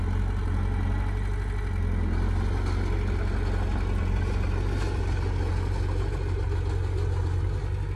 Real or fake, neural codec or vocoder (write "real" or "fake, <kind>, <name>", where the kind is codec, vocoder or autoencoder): real